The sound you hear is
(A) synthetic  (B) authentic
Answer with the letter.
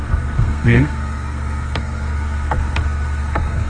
A